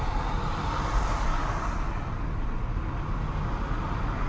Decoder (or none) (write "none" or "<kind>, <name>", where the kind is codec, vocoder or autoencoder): none